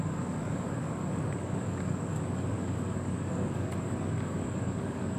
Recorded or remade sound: remade